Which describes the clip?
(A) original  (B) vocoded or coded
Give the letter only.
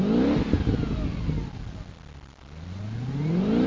A